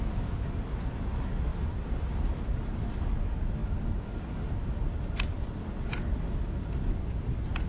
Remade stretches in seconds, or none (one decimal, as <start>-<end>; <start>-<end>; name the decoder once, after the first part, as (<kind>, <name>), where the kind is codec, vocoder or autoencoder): 1.5-2.1 (vocoder, BigVGAN v2); 3.6-5.5